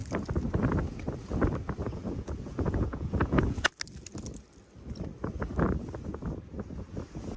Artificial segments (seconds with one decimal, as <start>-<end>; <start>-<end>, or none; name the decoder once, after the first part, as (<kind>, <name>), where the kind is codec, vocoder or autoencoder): 1.8-3.7 (vocoder, Vocos)